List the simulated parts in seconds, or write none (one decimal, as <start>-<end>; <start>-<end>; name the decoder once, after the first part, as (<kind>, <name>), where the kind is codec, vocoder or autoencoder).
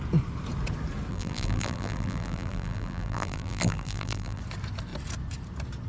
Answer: 1.1-4.4 (vocoder, BigVGAN v2)